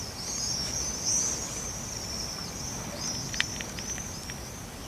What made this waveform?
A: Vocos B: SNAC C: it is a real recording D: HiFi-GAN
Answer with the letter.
C